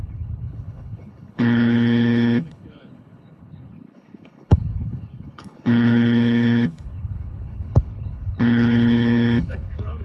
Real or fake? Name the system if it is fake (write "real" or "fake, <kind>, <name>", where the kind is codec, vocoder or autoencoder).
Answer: fake, codec, HILCodec